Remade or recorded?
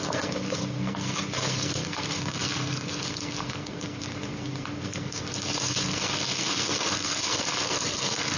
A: remade